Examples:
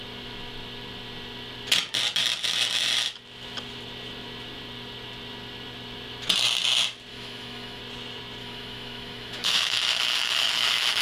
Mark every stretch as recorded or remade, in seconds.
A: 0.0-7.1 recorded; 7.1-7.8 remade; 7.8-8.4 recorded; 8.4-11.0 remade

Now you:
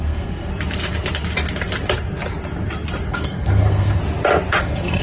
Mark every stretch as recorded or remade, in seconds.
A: 0.0-0.5 remade; 0.5-3.1 recorded; 3.1-4.0 remade; 4.0-4.6 recorded; 4.6-5.0 remade

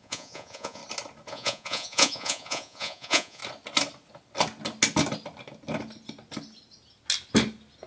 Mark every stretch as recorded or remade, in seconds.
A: 0.0-0.8 remade; 0.8-1.3 recorded; 1.3-3.4 remade; 3.4-7.9 recorded